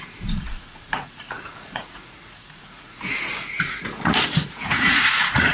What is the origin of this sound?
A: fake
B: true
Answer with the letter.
A